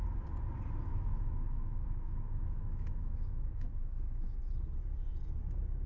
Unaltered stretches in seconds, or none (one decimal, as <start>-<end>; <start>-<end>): 0.0-0.9; 4.4-5.9